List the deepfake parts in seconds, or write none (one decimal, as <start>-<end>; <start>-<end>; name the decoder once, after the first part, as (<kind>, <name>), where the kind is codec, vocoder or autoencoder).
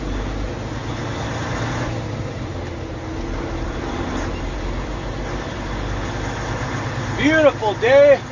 none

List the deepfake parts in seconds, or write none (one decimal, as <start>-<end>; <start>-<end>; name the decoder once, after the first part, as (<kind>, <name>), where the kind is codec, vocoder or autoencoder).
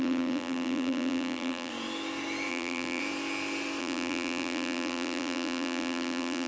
0.0-1.7 (vocoder, BigVGAN v2); 2.5-3.0; 3.8-6.5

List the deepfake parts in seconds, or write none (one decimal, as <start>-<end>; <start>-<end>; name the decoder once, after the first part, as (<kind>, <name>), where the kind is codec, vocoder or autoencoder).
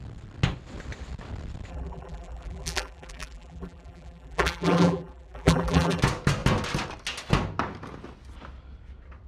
1.7-6.0 (vocoder, BigVGAN v2)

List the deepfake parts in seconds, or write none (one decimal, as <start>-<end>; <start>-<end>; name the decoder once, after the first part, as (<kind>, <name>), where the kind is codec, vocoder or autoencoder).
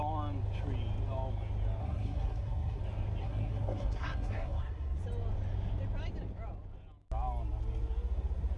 1.8-2.8 (codec, SNAC); 3.2-5.0